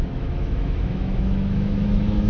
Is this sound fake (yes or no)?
yes